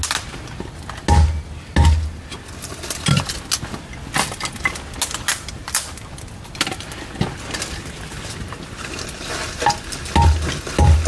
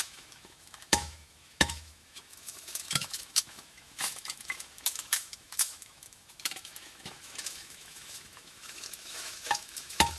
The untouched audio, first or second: first